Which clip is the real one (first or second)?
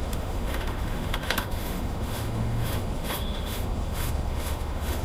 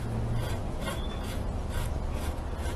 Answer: second